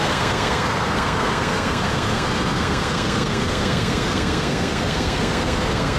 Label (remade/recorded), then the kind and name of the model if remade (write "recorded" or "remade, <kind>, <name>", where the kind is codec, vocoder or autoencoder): remade, codec, SNAC